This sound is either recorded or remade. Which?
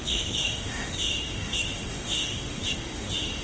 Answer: remade